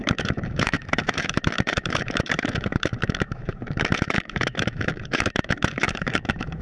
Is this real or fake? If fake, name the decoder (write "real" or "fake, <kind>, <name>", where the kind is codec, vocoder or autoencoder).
fake, autoencoder, DAC-VAE